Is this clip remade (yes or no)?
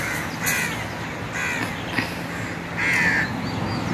no